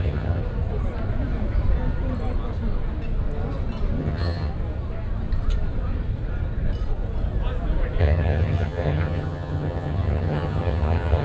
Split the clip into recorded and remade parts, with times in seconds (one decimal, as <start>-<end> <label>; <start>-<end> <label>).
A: 0.0-0.4 remade; 0.4-4.0 recorded; 4.0-4.5 remade; 4.5-8.0 recorded; 8.0-11.2 remade